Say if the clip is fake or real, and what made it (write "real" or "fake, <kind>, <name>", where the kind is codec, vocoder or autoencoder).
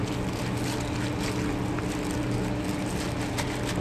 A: real